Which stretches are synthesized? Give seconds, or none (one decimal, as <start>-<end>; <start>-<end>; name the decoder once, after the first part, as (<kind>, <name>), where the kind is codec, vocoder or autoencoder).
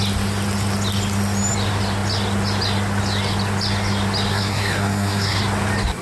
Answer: 4.3-5.4 (codec, SNAC)